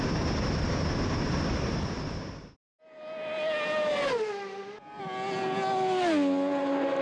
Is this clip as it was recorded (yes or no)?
yes